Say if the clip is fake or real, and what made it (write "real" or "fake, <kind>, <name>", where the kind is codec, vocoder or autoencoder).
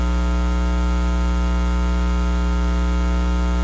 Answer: real